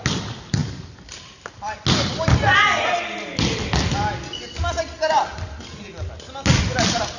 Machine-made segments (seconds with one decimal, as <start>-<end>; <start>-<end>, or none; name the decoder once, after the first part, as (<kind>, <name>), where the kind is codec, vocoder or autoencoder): none